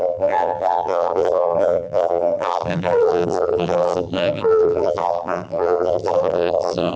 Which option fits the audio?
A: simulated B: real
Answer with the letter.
A